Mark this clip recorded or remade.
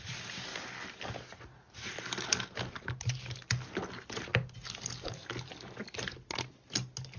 recorded